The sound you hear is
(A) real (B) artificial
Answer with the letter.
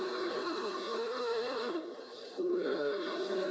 B